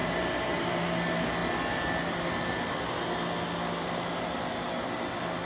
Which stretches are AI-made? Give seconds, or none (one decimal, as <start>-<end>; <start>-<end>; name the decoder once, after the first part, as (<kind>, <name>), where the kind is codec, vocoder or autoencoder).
0.0-0.7 (vocoder, BigVGAN v2)